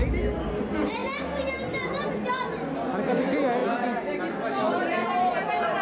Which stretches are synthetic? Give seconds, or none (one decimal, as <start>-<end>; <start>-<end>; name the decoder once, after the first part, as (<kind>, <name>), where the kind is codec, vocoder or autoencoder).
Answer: none